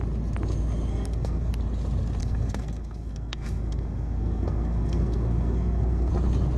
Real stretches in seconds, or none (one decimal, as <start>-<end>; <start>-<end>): 0.0-0.9; 1.5-2.2; 6.1-6.6